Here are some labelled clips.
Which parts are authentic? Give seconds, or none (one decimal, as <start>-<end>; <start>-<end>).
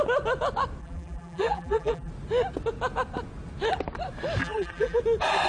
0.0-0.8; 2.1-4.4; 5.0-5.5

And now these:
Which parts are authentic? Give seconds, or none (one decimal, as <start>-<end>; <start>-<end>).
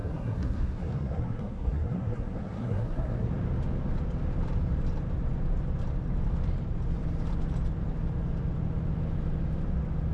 3.3-10.1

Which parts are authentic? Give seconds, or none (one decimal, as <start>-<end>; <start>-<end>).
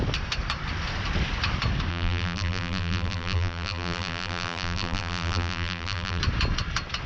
0.0-1.9; 6.2-7.1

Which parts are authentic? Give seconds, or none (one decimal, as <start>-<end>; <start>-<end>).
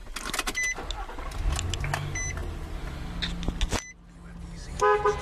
0.0-5.2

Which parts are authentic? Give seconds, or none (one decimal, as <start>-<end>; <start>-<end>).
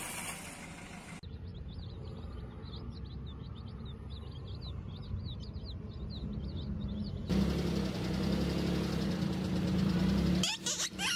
0.0-1.5; 2.3-11.2